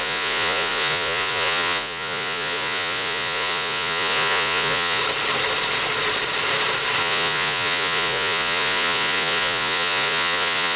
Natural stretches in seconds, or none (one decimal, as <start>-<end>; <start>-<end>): 5.0-7.0